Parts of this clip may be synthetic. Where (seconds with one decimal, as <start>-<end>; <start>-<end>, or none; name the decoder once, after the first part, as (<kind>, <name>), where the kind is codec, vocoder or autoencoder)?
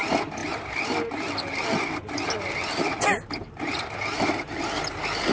none